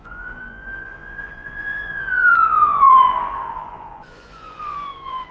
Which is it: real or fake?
fake